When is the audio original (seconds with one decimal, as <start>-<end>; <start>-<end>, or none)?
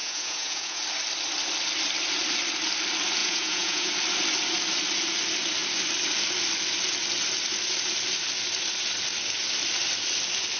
0.8-3.2; 3.9-10.6